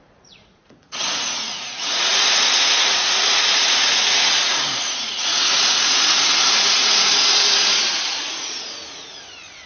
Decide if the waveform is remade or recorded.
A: remade